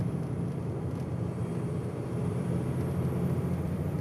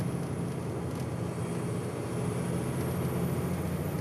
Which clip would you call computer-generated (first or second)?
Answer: first